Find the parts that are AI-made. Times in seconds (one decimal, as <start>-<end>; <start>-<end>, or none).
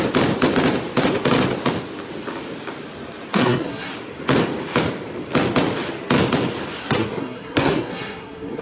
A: 3.3-3.9; 6.8-8.6